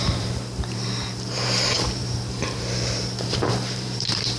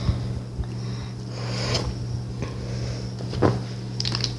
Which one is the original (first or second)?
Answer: second